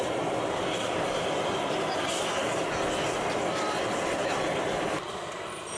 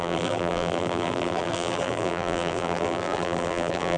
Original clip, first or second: first